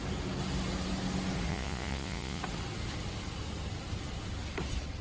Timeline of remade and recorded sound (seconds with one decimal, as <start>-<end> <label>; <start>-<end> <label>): 0.0-1.5 recorded; 1.5-2.4 remade; 2.4-5.0 recorded